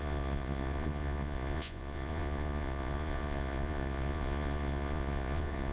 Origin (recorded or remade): remade